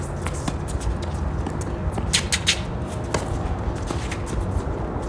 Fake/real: real